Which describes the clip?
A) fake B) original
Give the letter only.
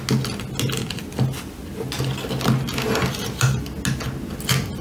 B